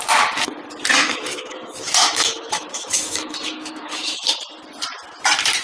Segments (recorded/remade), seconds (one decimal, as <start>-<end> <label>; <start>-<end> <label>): 0.0-1.0 recorded; 1.0-4.4 remade; 4.4-5.6 recorded